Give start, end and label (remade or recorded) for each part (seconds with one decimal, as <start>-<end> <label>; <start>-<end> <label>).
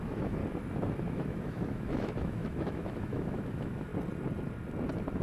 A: 0.0-0.4 remade; 0.4-1.0 recorded; 1.0-3.9 remade; 3.9-5.2 recorded